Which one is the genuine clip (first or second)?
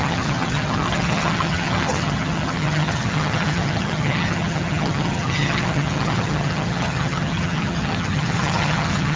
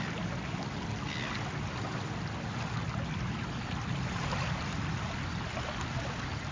second